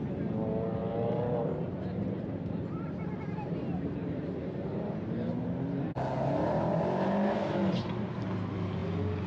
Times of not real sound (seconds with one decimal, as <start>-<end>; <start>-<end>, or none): 0.8-5.4